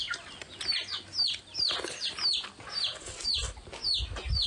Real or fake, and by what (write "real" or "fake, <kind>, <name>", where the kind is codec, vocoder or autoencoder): real